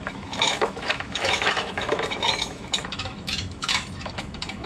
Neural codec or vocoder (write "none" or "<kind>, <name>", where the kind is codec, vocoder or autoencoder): autoencoder, DAC-VAE